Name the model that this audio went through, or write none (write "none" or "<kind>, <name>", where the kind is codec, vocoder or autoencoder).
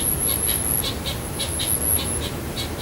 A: none